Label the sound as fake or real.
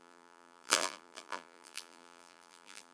fake